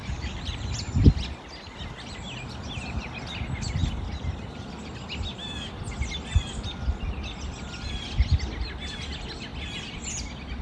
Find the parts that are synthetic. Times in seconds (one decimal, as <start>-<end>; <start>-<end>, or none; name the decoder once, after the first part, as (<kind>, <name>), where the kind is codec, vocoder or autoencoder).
0.0-0.7 (vocoder, BigVGAN v2)